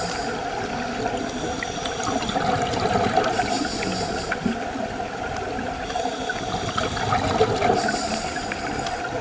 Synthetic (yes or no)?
no